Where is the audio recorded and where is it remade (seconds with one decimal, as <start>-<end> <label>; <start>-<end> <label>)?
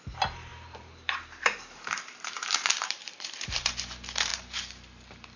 0.0-0.5 recorded; 0.5-3.7 remade; 3.7-4.3 recorded; 4.3-5.4 remade